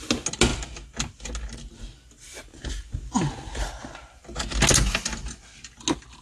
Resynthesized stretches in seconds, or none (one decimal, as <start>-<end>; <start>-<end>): none